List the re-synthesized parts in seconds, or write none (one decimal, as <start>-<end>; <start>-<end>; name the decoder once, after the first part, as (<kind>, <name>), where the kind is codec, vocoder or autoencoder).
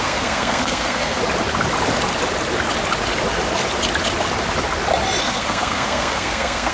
0.0-1.2 (codec, SNAC); 5.2-6.7